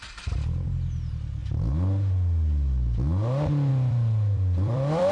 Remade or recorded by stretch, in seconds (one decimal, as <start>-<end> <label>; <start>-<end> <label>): 0.0-1.4 remade; 1.4-3.7 recorded; 3.7-5.1 remade